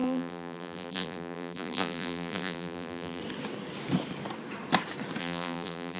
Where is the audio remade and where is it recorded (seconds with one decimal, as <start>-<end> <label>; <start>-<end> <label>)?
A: 0.0-3.2 remade; 3.2-5.2 recorded; 5.2-6.0 remade